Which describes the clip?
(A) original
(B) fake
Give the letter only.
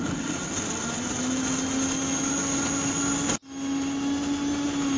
A